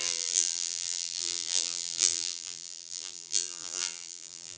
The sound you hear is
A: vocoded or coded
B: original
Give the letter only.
A